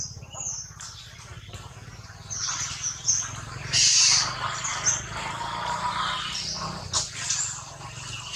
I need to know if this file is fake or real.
real